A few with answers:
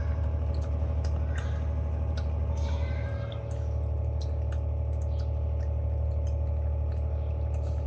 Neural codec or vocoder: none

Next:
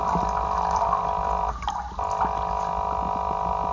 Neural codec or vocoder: none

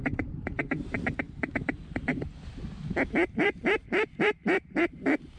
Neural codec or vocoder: vocoder, BigVGAN v2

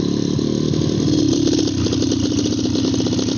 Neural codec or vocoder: none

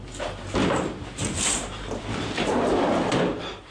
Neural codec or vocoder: vocoder, BigVGAN v2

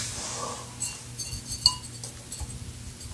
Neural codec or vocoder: none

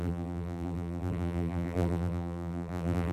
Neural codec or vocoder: vocoder, BigVGAN v2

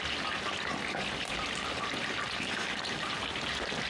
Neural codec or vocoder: none